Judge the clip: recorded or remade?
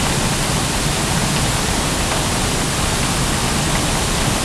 recorded